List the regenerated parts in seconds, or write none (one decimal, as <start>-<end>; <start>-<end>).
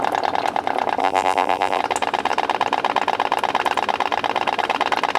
1.0-1.8